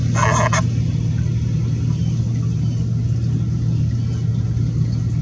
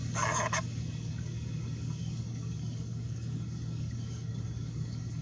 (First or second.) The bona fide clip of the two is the first